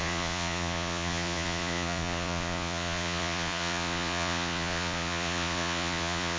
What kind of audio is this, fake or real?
fake